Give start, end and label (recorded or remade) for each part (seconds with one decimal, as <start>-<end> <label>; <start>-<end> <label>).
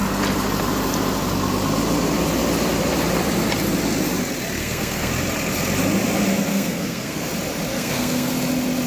0.0-4.6 recorded; 4.6-5.1 remade; 5.1-6.5 recorded; 6.5-7.3 remade; 7.3-7.7 recorded; 7.7-8.3 remade; 8.3-8.9 recorded